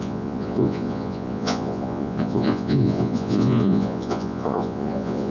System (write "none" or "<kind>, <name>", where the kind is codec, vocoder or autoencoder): vocoder, Vocos